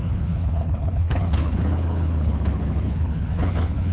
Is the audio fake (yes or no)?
yes